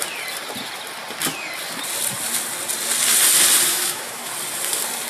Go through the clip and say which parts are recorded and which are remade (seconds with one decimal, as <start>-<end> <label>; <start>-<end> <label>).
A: 0.0-3.7 recorded; 3.7-4.3 remade; 4.3-5.1 recorded